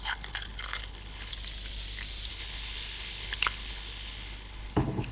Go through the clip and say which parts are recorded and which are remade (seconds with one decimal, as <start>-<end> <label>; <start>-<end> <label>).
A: 0.0-1.3 remade; 1.3-2.3 recorded; 2.3-5.1 remade